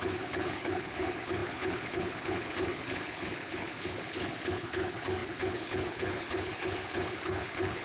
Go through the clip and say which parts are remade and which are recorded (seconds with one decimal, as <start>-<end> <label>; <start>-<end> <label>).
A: 0.0-7.8 remade